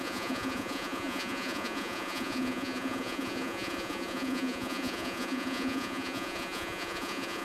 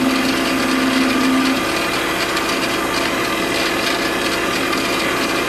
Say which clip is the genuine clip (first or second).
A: second